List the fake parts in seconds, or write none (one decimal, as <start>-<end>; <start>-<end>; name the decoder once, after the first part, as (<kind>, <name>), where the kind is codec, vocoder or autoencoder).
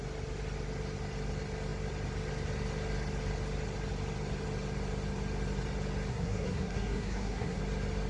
6.1-7.6 (codec, SNAC)